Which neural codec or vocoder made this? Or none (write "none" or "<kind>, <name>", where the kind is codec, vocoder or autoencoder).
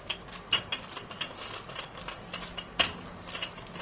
none